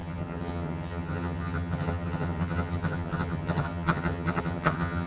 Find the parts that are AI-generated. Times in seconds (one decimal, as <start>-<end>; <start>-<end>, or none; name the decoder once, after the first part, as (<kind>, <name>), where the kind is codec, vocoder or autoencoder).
0.0-5.1 (vocoder, HiFi-GAN)